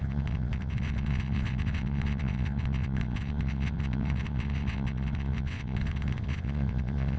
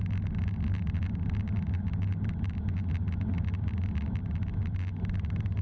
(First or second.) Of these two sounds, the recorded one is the second